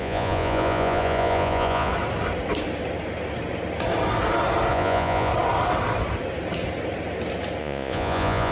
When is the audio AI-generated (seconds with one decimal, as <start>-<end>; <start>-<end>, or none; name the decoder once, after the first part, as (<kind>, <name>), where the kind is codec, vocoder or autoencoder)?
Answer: 0.0-1.9 (vocoder, Vocos); 4.7-5.3; 7.6-8.5